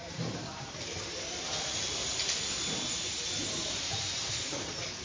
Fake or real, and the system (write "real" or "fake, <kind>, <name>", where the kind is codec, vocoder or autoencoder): fake, vocoder, BigVGAN v2